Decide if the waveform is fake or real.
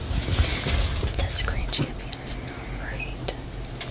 real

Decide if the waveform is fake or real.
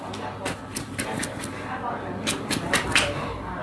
real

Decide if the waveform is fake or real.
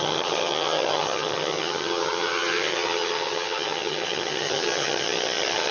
fake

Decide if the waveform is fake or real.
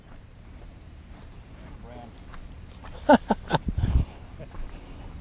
real